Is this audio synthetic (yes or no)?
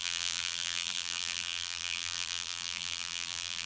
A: yes